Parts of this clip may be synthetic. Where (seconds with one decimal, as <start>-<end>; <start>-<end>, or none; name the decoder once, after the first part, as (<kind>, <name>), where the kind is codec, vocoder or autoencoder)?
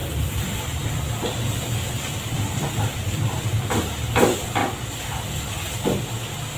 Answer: 0.0-3.9 (vocoder, BigVGAN v2); 4.6-5.2